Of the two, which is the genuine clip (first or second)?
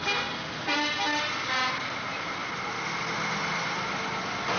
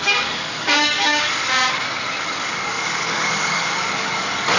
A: first